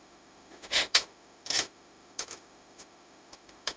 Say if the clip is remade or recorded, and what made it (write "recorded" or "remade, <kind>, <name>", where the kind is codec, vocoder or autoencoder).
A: remade, autoencoder, DAC-VAE